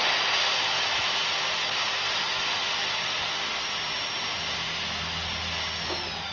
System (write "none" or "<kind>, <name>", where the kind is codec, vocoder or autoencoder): none